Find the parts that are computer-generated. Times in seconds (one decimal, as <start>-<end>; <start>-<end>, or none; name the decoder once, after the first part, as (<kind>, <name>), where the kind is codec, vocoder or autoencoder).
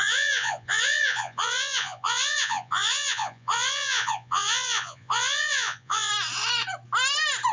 0.0-6.1 (vocoder, Vocos)